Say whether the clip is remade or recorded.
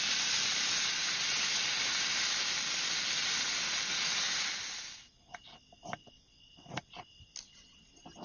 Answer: recorded